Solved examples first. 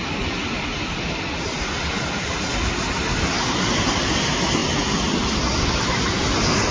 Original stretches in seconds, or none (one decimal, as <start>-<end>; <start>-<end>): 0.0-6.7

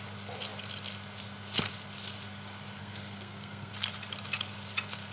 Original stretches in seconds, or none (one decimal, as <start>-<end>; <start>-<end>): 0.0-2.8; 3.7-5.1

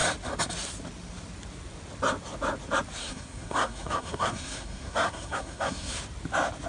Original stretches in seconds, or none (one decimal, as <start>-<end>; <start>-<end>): 0.0-3.0; 6.0-6.7